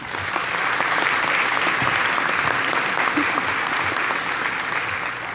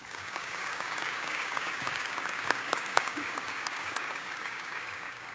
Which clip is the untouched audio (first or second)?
first